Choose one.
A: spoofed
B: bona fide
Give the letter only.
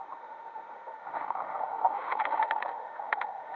A